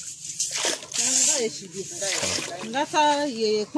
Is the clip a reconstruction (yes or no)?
no